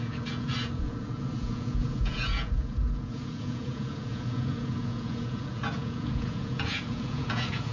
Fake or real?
fake